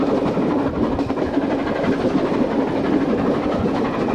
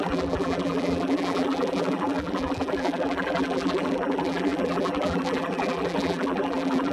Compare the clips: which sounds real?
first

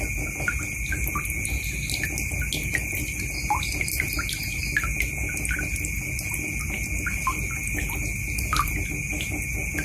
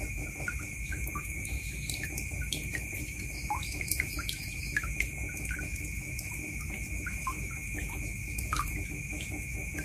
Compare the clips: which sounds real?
first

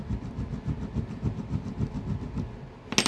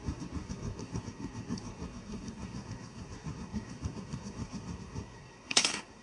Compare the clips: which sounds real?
first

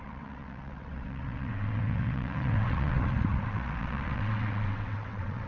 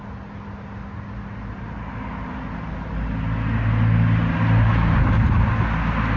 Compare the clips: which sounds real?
second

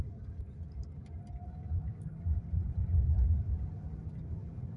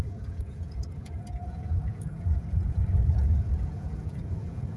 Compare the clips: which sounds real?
first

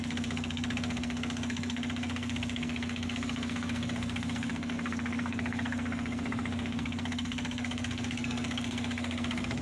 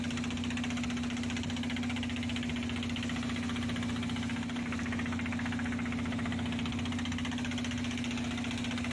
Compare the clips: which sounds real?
second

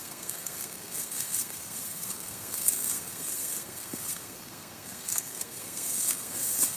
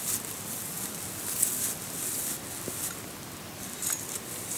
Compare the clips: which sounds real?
second